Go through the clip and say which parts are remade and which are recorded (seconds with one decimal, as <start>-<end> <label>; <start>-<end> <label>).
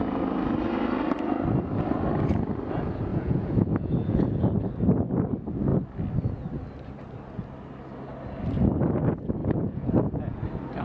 0.0-3.1 recorded; 3.1-4.5 remade; 4.5-9.4 recorded; 9.4-10.4 remade; 10.4-10.8 recorded